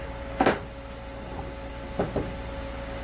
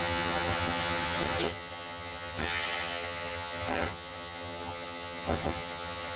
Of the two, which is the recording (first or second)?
first